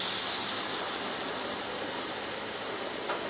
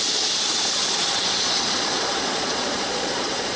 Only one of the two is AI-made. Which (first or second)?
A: second